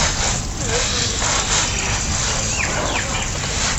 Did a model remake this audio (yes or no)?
no